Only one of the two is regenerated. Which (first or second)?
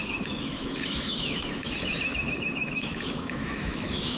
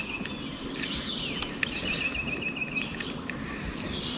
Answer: first